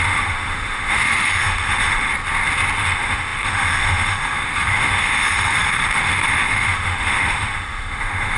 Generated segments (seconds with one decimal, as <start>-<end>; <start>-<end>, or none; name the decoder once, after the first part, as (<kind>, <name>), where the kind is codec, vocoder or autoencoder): 0.0-2.1 (autoencoder, DAC-VAE); 2.8-8.4